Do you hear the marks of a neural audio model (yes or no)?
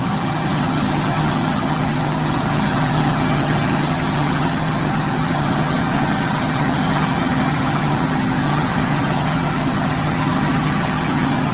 yes